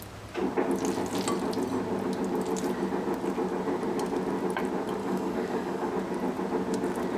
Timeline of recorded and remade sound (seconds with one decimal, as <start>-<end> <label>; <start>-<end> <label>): 0.0-5.0 recorded; 5.0-5.9 remade; 5.9-7.2 recorded